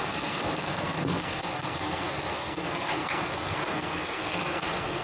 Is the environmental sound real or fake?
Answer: fake